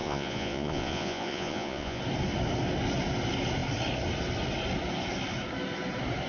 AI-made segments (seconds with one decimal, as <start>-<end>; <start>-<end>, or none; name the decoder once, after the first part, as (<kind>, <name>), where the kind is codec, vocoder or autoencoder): 0.0-2.0 (vocoder, Vocos)